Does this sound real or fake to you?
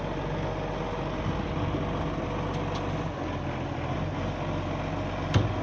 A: real